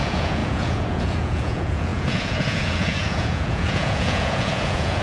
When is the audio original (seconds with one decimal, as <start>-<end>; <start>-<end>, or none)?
none